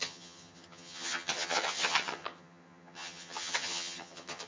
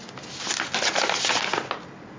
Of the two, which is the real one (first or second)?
second